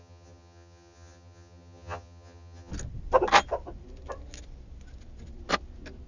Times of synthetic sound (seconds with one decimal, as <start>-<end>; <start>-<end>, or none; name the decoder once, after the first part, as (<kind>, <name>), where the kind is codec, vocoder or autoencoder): 0.0-2.7 (vocoder, HiFi-GAN)